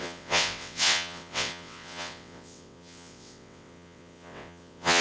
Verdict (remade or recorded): remade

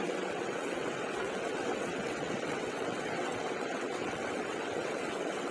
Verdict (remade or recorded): remade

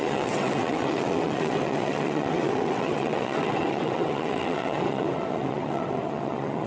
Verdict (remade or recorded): remade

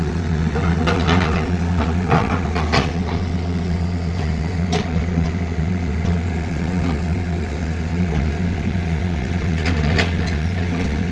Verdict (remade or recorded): remade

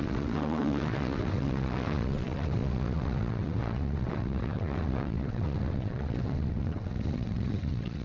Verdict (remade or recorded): remade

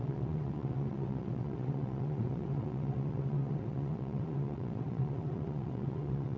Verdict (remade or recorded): remade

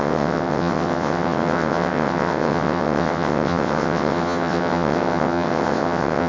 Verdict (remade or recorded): remade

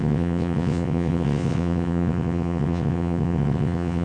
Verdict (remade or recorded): remade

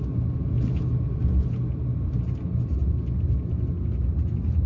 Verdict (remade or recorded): recorded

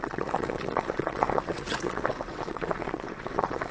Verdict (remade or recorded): remade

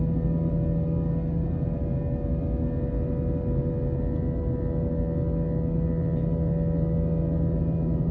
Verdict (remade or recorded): recorded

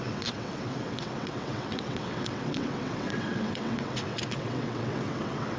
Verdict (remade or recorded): remade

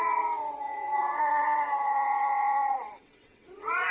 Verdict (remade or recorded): remade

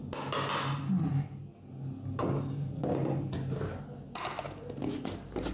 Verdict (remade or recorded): recorded